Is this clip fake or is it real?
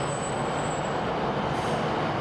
real